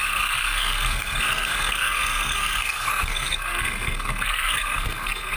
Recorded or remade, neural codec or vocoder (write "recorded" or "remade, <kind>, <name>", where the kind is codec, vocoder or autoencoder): remade, codec, SNAC